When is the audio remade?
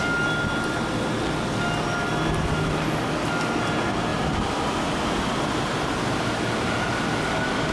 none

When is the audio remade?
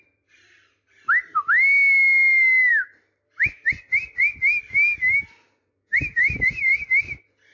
2.7-4.2 (vocoder, BigVGAN v2); 5.6-6.8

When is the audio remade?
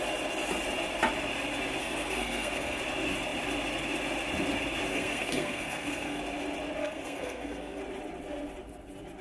1.8-2.8 (codec, SNAC); 4.9-6.2; 6.8-7.8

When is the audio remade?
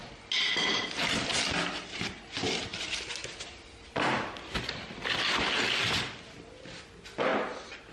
none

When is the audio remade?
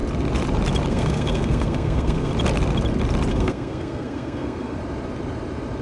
0.9-2.3 (codec, SNAC); 3.3-4.8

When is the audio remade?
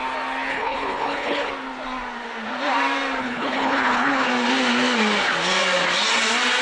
0.5-1.5 (codec, HILCodec); 3.2-4.3